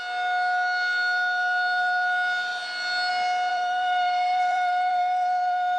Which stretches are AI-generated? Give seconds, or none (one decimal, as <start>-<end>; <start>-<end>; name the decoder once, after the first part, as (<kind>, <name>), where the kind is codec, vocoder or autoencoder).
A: 3.5-5.8 (vocoder, BigVGAN v2)